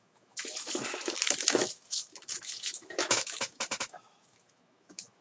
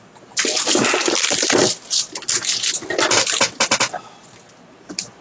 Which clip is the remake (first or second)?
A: first